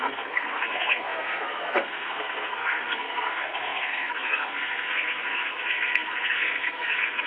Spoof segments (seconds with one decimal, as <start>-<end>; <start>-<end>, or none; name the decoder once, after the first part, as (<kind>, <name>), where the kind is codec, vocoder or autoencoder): 0.0-7.3 (codec, SNAC)